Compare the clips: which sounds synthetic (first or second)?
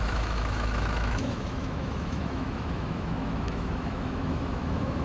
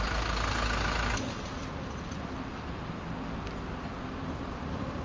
first